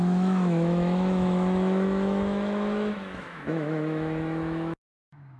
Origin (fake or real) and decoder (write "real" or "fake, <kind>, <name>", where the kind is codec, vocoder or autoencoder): fake, autoencoder, DAC-VAE